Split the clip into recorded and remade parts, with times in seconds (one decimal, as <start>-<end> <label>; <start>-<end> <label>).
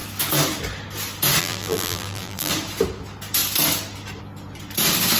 0.0-1.4 recorded; 1.4-2.5 remade; 2.5-5.2 recorded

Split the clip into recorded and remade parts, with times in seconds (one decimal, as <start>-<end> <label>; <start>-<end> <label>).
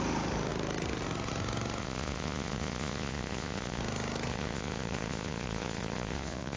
0.0-1.8 recorded; 1.8-3.8 remade; 3.8-4.3 recorded; 4.3-6.6 remade